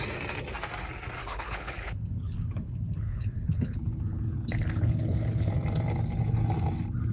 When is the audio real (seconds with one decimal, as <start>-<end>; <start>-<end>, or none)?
0.0-1.2; 5.5-7.1